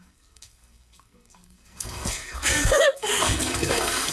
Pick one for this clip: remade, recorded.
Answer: remade